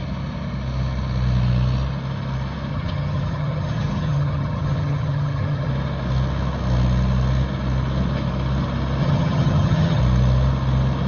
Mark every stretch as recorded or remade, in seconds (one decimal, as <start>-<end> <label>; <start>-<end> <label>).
0.0-2.7 recorded; 2.7-5.7 remade; 5.7-9.0 recorded; 9.0-10.0 remade; 10.0-11.1 recorded